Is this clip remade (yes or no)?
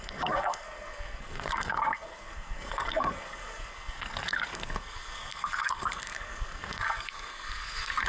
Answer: yes